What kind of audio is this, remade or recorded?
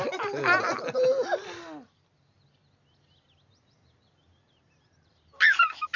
recorded